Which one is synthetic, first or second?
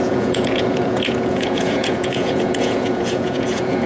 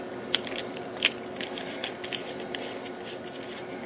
first